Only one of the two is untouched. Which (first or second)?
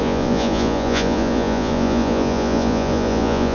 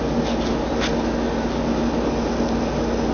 second